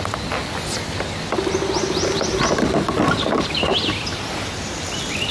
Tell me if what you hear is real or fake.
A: real